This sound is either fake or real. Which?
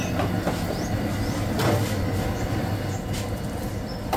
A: real